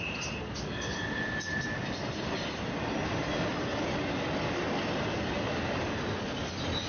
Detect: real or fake real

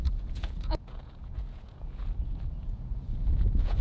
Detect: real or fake fake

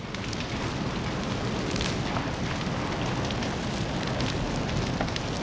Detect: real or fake real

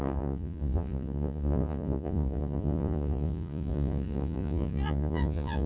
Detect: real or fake fake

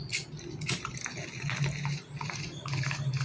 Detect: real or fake real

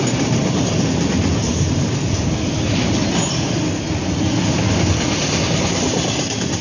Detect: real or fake real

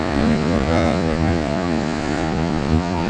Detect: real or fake fake